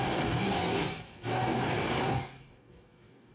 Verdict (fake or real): fake